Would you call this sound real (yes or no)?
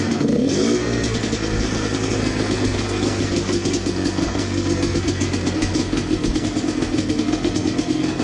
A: no